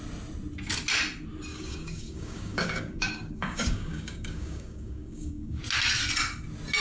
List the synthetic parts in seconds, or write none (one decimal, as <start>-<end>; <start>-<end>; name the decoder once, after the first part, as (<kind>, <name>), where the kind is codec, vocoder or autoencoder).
1.5-5.6 (codec, DAC)